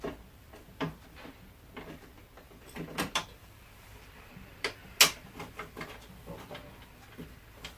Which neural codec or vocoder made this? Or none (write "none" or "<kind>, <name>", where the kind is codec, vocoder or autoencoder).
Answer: none